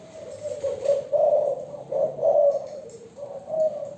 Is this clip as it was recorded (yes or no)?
no